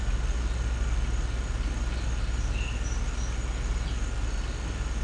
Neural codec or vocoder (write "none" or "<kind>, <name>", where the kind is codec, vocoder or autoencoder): none